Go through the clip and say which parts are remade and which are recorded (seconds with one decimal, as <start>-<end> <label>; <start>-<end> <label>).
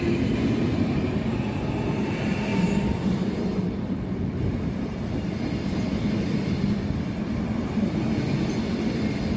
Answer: 0.0-9.4 recorded